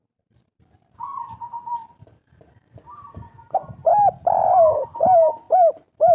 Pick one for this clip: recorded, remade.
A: remade